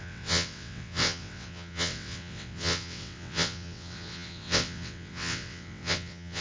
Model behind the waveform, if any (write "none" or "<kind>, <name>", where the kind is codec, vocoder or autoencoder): vocoder, WaveNeXt